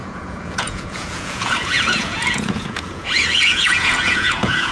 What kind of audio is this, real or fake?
fake